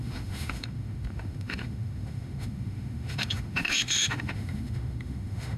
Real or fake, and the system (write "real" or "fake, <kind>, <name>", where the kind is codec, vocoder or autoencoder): fake, autoencoder, DAC-VAE